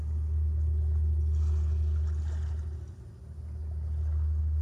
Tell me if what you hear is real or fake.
real